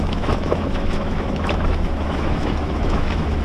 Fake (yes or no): yes